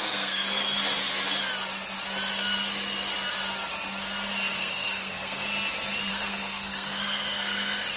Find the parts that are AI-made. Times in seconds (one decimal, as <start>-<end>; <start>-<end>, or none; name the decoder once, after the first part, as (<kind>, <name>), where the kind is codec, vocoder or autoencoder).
0.0-0.6 (codec, SNAC); 4.6-5.5; 6.1-8.0